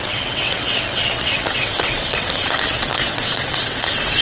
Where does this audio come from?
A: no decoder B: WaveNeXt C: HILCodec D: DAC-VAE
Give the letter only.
B